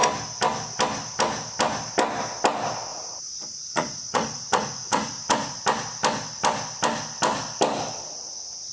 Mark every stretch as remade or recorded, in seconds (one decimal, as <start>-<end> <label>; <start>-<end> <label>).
0.0-2.9 recorded; 2.9-5.6 remade; 5.6-8.7 recorded